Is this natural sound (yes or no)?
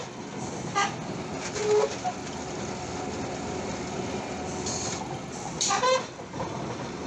yes